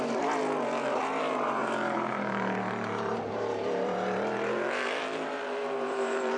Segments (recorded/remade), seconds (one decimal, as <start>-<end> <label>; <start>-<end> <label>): 0.0-6.4 remade